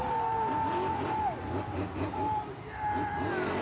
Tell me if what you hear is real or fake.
real